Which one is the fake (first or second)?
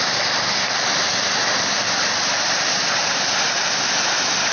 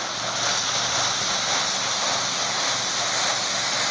first